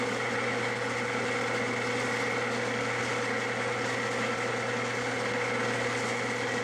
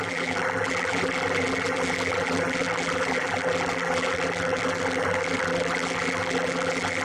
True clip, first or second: first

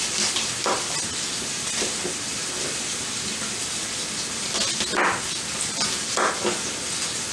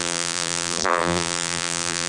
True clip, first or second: first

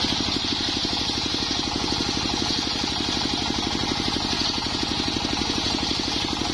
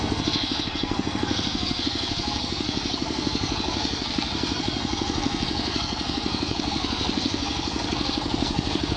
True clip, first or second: first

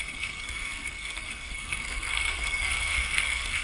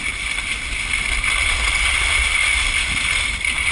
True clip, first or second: second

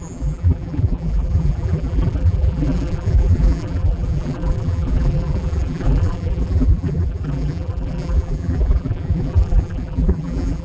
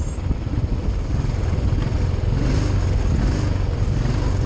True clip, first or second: second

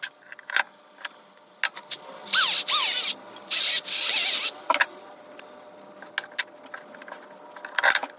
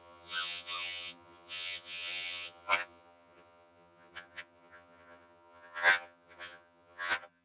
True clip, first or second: first